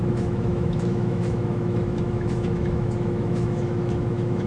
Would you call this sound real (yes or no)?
no